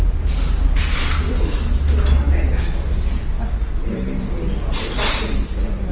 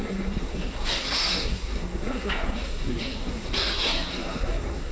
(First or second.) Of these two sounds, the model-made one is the second